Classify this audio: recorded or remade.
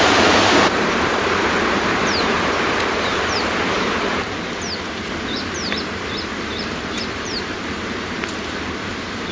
remade